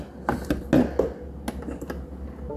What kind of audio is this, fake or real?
real